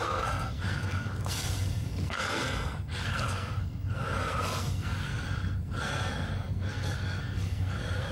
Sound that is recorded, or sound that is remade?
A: remade